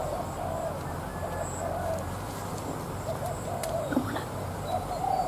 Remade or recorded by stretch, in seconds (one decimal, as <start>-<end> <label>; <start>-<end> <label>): 0.0-3.6 recorded; 3.6-5.3 remade